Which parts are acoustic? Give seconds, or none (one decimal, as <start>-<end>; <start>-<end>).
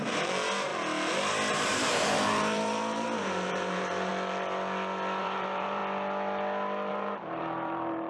0.7-1.5; 4.1-5.2; 5.8-6.9